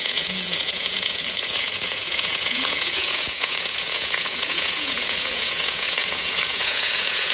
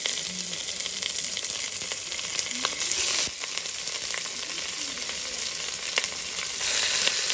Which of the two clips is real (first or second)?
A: second